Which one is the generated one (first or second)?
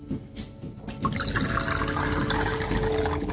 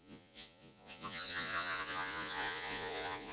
second